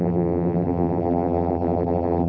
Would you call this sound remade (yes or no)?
yes